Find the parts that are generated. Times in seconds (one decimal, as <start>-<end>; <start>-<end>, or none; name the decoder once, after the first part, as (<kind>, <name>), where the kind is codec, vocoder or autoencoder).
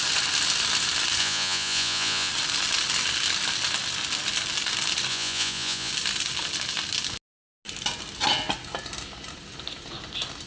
1.2-2.3 (vocoder, Vocos); 5.1-5.9